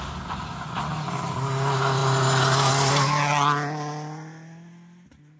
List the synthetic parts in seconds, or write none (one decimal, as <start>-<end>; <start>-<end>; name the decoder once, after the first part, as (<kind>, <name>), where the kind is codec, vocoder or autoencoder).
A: none